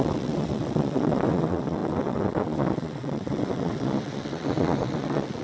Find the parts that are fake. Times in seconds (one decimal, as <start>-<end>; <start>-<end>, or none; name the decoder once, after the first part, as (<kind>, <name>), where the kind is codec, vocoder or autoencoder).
0.0-5.4 (vocoder, WaveNeXt)